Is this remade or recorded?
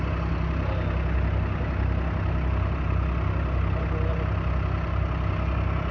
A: recorded